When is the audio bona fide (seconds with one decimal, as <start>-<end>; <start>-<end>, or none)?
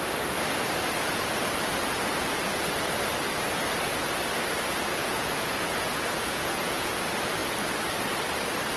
0.0-5.0; 7.0-8.8